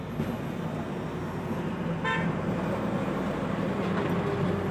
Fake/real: real